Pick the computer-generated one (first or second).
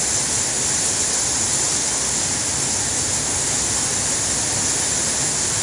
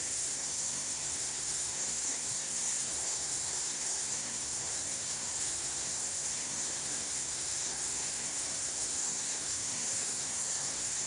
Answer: second